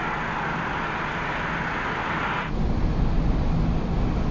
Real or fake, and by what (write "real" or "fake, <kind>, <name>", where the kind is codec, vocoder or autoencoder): real